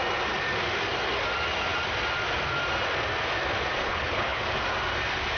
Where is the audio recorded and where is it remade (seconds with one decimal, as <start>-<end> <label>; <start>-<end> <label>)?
0.0-3.8 recorded; 3.8-4.4 remade; 4.4-5.4 recorded